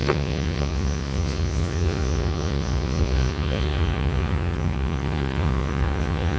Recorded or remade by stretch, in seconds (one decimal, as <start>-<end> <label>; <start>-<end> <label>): 0.0-6.4 remade